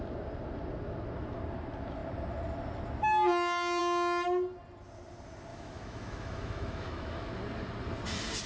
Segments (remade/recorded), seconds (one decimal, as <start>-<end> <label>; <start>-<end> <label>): 0.0-5.5 recorded; 5.5-7.3 remade; 7.3-8.5 recorded